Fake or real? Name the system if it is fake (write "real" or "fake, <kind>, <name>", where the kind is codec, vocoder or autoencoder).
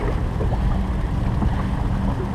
real